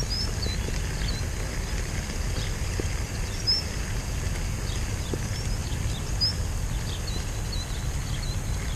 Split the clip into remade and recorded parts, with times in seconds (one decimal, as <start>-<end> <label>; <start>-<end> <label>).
0.0-8.8 recorded